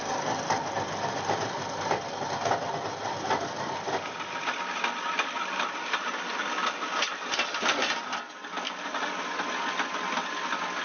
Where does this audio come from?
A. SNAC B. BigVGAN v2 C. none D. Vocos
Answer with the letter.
C